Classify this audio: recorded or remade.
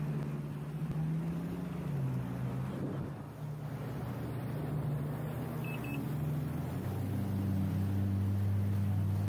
recorded